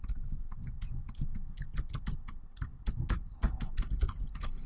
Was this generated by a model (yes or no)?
no